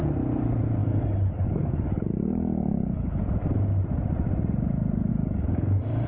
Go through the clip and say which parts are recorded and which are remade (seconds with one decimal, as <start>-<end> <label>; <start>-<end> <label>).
0.0-0.8 recorded; 0.8-3.2 remade; 3.2-5.1 recorded; 5.1-6.1 remade